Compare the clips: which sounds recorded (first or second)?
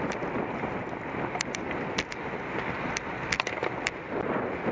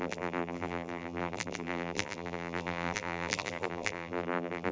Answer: first